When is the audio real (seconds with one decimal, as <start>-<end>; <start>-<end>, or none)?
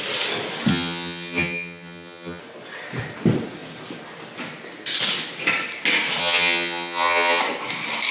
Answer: 0.0-0.7; 2.4-6.2; 7.4-8.1